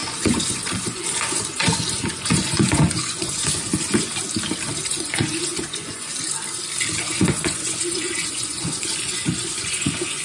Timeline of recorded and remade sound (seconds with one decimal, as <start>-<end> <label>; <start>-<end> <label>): 0.0-4.1 remade; 4.1-4.9 recorded; 4.9-6.1 remade; 6.1-7.0 recorded; 7.0-10.2 remade